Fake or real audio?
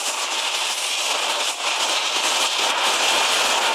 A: real